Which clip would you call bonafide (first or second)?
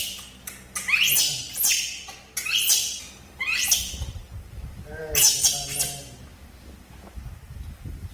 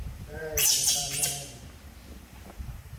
first